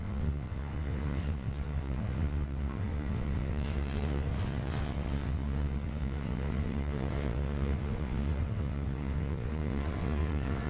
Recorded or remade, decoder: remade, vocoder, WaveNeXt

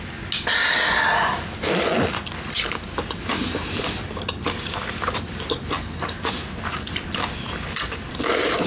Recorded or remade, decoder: recorded